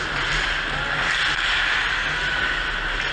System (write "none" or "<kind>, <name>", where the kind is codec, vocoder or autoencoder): none